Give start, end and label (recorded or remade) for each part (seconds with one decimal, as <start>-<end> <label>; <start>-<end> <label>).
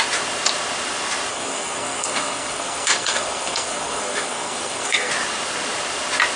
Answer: 0.0-1.3 recorded; 1.3-5.1 remade; 5.1-6.4 recorded